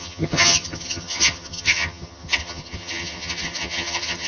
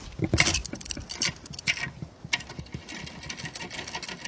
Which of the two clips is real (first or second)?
second